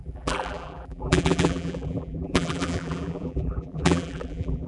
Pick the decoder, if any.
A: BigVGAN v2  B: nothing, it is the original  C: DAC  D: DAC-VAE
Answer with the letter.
A